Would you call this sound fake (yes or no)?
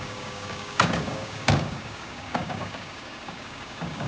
yes